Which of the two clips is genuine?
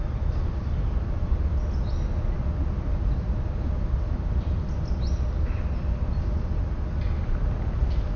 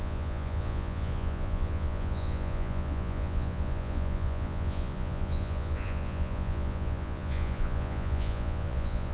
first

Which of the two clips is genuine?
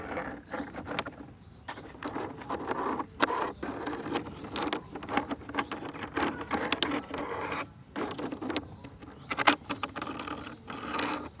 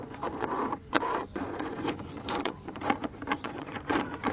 first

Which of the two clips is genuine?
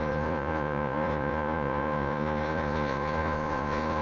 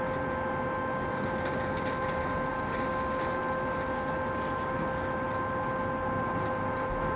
second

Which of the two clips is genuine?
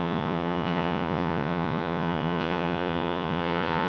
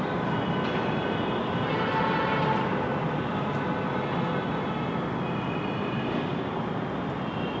second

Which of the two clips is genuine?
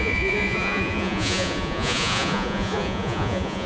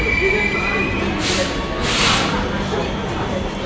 second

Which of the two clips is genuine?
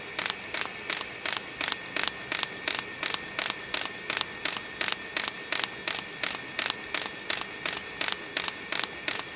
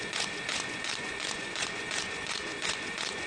first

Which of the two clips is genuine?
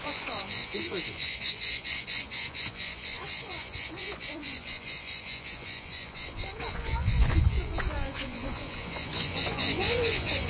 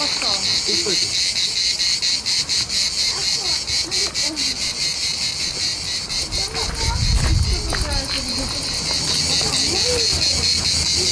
second